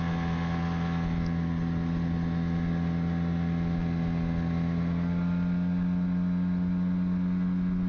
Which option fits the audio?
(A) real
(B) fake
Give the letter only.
A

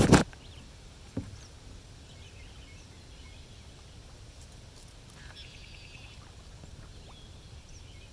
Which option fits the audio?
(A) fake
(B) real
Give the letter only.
B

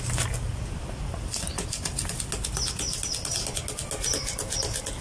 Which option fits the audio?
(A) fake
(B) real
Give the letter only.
B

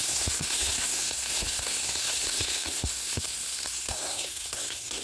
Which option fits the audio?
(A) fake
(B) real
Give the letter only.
A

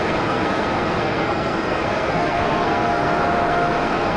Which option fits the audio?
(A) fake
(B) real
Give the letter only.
A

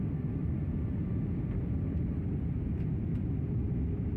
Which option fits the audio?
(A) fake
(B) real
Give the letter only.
B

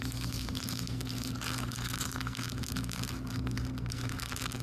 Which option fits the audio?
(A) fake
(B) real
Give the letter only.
A